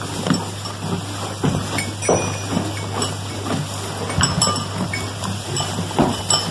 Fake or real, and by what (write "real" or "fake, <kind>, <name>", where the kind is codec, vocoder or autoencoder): real